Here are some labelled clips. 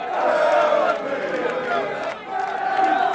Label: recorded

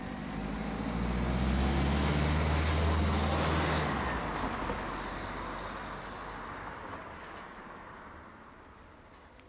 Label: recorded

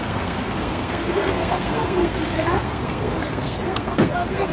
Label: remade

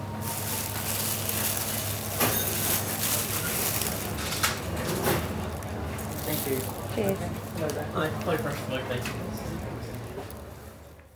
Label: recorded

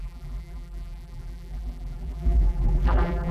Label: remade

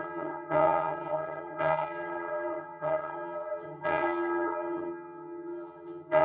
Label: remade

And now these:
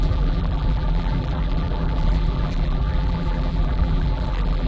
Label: remade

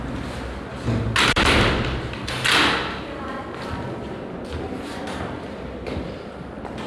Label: recorded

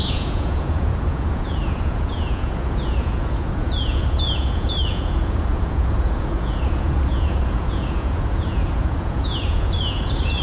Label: remade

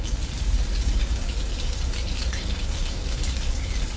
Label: remade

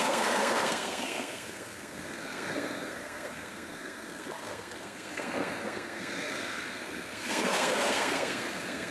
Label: remade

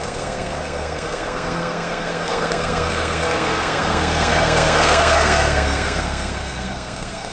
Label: remade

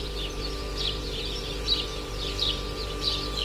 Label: remade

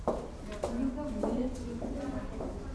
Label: recorded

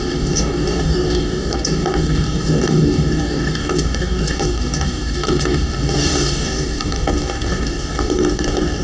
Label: remade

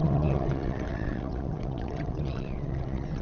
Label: remade